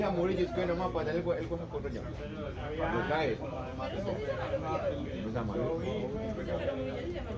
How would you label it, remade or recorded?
recorded